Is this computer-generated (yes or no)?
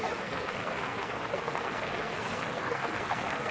yes